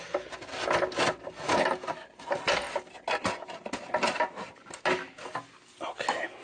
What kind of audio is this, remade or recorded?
recorded